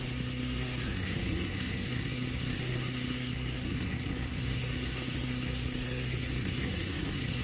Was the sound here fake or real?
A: fake